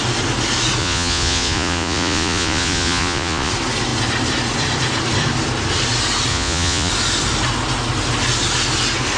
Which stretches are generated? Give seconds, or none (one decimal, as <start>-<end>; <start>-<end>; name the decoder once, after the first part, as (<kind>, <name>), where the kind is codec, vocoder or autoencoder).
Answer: 0.8-3.5 (vocoder, Vocos); 6.3-6.9